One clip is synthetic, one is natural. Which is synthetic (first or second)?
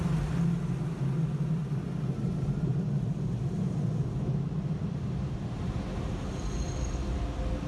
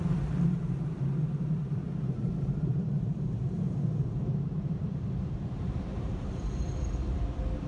second